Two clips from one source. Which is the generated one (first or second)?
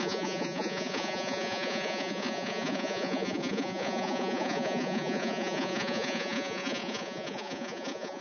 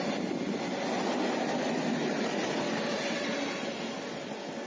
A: first